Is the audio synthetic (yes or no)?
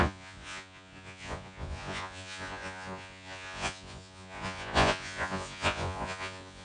yes